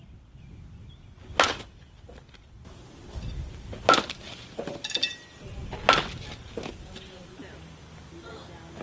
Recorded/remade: recorded